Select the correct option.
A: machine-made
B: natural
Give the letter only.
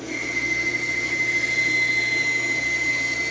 B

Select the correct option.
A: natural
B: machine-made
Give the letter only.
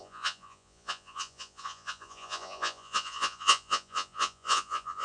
B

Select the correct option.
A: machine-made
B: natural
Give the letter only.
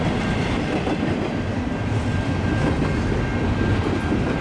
B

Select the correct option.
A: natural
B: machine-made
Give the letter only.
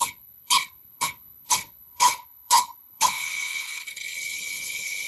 B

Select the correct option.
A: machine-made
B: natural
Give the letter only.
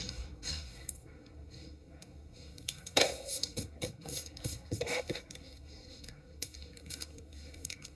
A